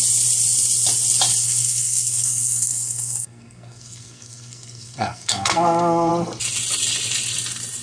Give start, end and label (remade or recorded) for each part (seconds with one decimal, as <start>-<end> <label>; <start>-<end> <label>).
0.0-1.4 recorded; 1.4-6.1 remade; 6.1-7.8 recorded